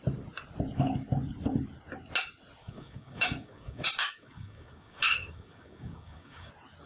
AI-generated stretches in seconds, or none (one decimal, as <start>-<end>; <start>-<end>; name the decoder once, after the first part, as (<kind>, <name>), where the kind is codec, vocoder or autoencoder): 2.6-6.5 (codec, DAC)